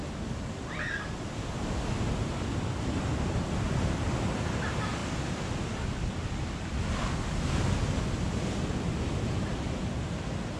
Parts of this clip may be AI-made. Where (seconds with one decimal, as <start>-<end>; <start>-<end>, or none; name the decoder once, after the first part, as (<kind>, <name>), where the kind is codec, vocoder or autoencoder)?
none